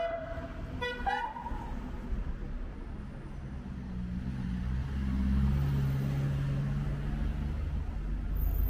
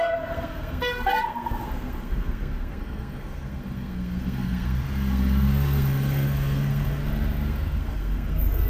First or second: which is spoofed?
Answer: second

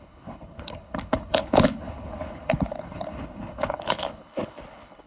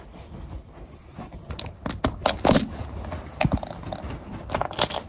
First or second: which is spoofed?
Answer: first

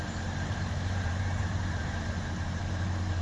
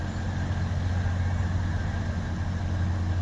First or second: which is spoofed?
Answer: first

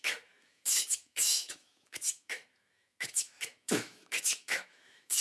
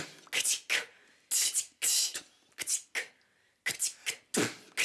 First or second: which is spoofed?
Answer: first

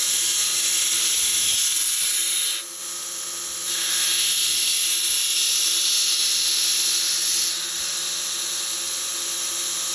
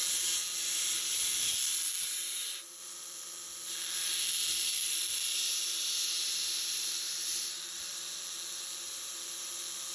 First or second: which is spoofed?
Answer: second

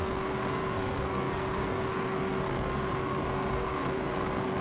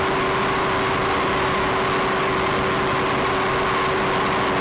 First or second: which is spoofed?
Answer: first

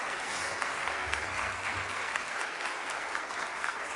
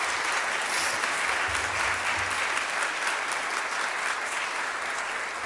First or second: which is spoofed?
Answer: first